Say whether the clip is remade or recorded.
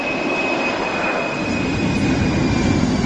recorded